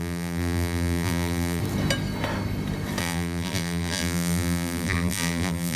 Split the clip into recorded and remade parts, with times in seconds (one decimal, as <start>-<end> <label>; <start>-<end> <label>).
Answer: 0.0-1.6 remade; 1.6-3.0 recorded; 3.0-5.8 remade